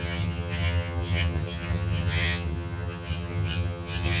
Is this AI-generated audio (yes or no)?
yes